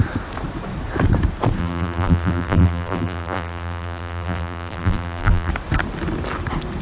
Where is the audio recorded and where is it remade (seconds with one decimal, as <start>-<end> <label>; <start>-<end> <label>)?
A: 0.0-1.6 recorded; 1.6-5.5 remade; 5.5-6.8 recorded